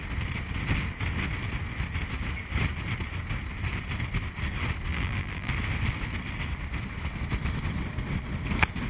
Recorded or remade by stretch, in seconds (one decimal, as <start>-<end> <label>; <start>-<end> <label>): 0.0-4.9 recorded; 4.9-5.5 remade; 5.5-8.9 recorded